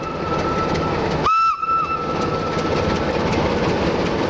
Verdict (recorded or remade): recorded